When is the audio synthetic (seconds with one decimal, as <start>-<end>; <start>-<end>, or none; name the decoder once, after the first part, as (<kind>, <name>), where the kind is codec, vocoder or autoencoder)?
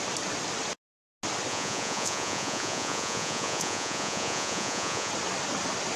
1.5-5.1 (vocoder, Vocos)